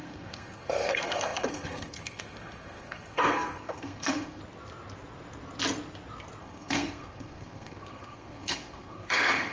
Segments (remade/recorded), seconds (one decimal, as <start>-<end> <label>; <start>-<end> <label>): 0.0-4.4 remade; 4.4-6.4 recorded; 6.4-9.5 remade